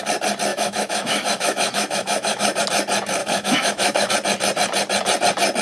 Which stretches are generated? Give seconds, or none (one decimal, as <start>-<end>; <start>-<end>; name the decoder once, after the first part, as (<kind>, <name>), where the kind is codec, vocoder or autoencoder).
0.5-2.6 (autoencoder, DAC-VAE); 3.2-4.1